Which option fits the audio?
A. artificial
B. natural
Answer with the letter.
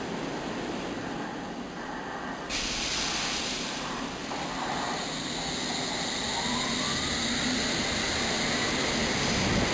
B